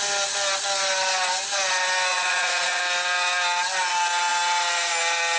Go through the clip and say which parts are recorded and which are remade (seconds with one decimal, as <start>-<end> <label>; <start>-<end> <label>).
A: 0.0-2.1 recorded; 2.1-2.8 remade; 2.8-5.4 recorded